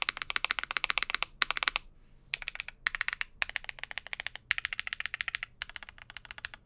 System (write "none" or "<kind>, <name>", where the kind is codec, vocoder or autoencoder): none